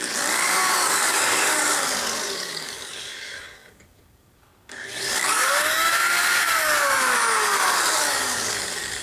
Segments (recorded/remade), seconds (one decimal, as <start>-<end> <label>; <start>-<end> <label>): 0.0-9.0 remade